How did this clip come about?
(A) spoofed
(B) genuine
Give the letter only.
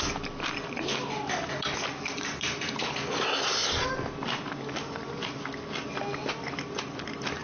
B